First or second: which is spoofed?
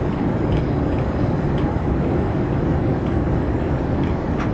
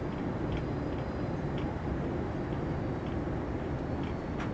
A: first